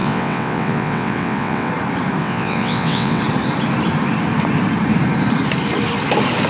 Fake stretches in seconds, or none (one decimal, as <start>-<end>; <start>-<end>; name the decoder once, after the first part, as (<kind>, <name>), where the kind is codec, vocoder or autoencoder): 0.0-1.7 (vocoder, WaveNeXt); 2.2-3.2